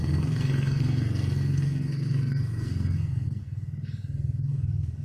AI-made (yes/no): yes